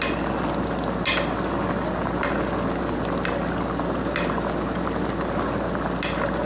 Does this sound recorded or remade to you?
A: recorded